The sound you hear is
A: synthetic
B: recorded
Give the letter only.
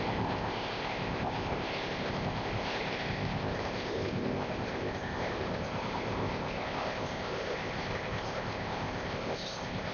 A